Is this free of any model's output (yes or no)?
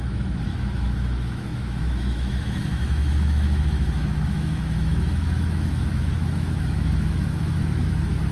no